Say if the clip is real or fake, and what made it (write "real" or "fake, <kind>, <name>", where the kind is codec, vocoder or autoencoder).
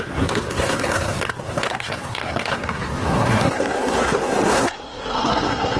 fake, codec, SNAC